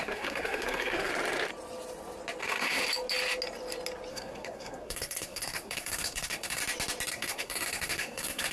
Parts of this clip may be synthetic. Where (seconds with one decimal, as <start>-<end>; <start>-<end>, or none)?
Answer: 0.0-1.1; 2.4-2.8; 4.1-6.6; 7.1-8.5